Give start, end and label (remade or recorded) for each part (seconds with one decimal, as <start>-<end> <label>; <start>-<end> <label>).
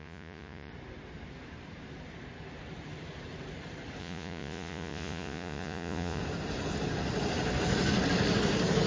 0.0-0.7 remade; 0.7-4.0 recorded; 4.0-6.2 remade; 6.2-8.9 recorded